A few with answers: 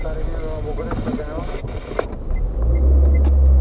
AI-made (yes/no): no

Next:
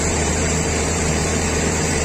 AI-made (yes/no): yes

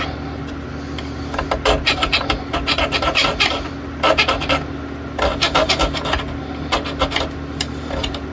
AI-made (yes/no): no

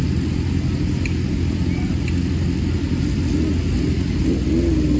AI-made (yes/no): no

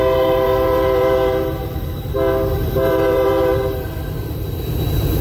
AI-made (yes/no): yes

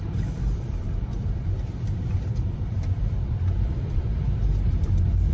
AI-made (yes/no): yes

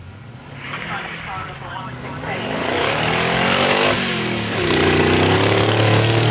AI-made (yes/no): yes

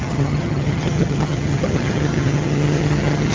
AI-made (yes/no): yes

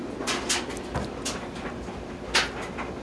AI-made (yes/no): no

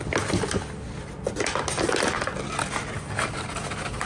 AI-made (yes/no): no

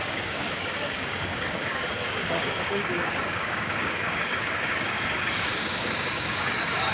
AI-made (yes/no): yes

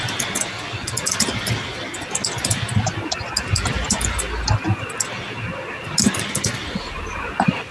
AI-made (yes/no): no